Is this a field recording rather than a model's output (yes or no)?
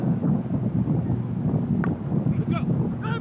yes